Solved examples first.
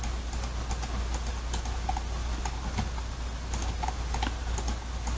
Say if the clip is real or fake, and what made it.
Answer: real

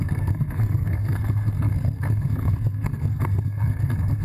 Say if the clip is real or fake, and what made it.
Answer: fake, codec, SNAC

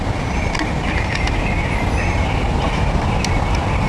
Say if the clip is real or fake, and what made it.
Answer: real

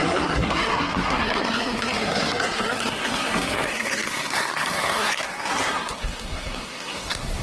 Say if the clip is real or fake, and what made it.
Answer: fake, codec, SNAC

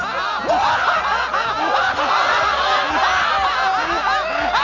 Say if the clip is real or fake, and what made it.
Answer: real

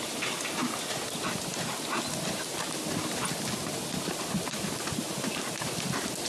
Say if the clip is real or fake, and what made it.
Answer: real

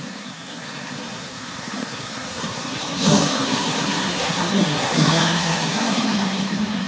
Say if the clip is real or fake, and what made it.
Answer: fake, codec, SNAC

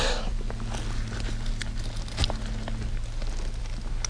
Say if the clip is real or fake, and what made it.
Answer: real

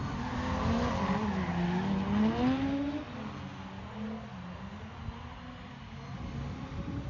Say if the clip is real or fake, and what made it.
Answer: real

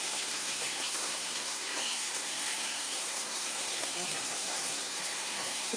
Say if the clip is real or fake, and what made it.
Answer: fake, codec, SNAC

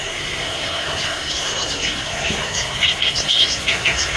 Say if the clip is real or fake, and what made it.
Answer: fake, codec, SNAC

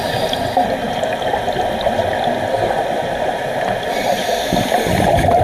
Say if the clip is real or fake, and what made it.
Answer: real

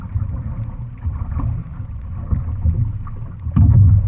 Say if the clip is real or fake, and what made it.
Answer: real